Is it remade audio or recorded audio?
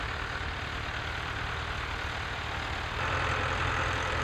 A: remade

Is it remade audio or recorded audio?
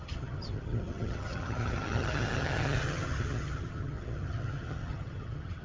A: remade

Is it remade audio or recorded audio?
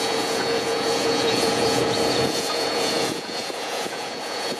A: remade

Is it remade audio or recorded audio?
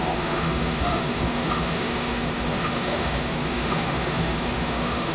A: remade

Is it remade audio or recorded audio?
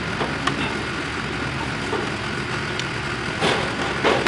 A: recorded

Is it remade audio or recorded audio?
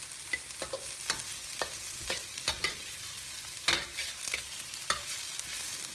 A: recorded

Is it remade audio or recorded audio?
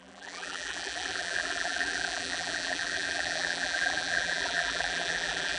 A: remade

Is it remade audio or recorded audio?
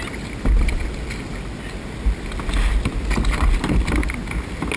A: recorded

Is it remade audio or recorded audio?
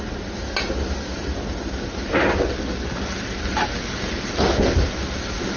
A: recorded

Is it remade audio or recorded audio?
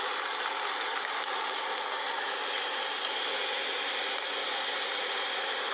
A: recorded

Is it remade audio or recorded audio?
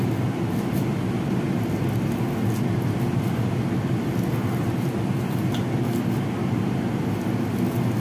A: recorded